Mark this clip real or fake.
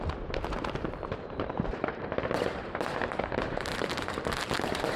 fake